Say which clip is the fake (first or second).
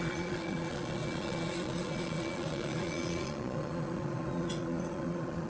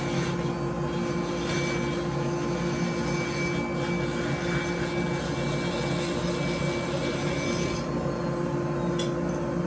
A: first